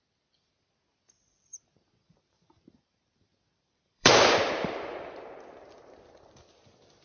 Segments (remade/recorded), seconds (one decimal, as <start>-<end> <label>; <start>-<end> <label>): 0.0-1.5 recorded; 1.5-5.2 remade; 5.2-7.0 recorded